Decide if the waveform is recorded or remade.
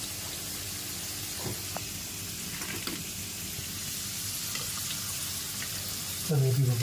recorded